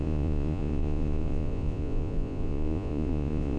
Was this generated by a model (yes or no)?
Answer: yes